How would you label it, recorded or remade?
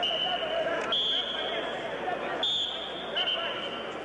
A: recorded